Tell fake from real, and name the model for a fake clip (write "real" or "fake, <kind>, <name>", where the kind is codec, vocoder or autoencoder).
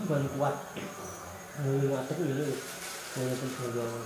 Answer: real